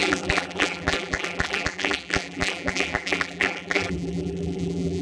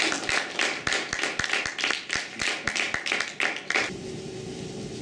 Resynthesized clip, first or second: first